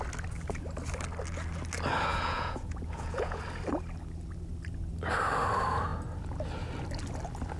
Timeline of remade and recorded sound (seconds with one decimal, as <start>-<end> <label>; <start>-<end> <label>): 0.0-2.1 recorded; 2.1-3.4 remade; 3.4-7.6 recorded

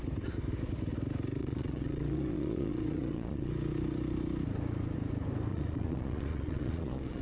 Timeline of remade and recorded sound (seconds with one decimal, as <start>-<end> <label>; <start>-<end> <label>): 0.0-1.4 recorded; 1.4-3.5 remade; 3.5-5.5 recorded; 5.5-7.2 remade